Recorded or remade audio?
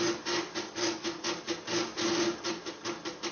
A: recorded